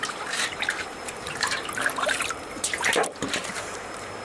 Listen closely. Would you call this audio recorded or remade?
remade